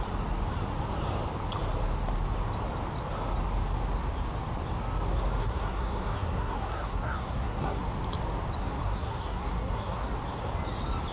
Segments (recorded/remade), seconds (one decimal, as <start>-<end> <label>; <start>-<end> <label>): 0.0-5.4 recorded; 5.4-7.9 remade; 7.9-8.6 recorded; 8.6-10.1 remade; 10.1-11.1 recorded